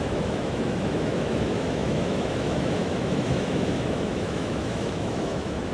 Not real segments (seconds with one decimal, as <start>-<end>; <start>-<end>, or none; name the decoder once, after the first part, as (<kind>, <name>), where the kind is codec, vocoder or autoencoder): 0.0-5.7 (autoencoder, DAC-VAE)